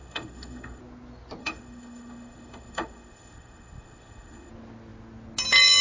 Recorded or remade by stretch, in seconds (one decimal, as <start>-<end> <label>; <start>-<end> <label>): 0.0-0.8 remade; 0.8-1.4 recorded; 1.4-4.5 remade; 4.5-5.8 recorded